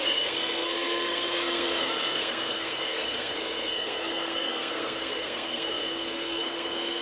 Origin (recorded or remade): remade